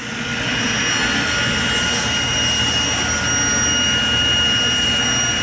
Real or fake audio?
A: real